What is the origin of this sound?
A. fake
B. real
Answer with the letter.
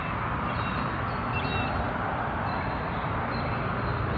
B